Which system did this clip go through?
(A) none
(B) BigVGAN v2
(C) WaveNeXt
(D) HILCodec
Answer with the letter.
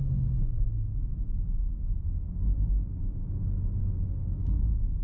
A